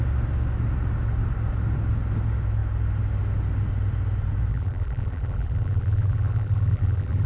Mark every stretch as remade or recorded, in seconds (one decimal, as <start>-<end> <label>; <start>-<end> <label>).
0.0-4.5 recorded; 4.5-7.3 remade